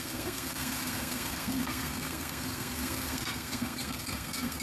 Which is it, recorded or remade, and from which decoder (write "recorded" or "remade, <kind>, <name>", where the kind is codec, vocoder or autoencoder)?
remade, codec, SNAC